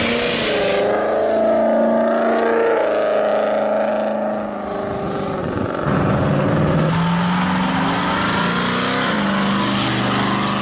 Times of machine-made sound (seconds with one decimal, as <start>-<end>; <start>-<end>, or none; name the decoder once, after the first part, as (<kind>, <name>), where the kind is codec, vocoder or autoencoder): 5.4-6.3 (vocoder, Vocos)